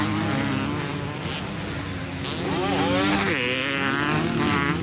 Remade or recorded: recorded